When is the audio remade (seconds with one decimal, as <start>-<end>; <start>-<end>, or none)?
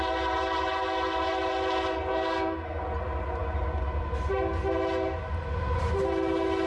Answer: 2.1-2.8